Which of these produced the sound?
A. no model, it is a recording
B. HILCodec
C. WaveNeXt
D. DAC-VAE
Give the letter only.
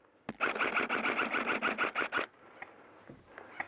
A